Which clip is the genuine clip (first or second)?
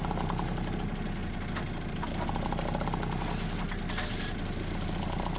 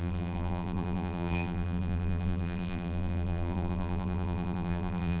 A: first